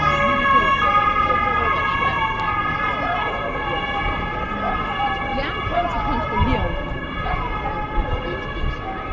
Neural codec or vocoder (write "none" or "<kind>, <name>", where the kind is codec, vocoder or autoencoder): none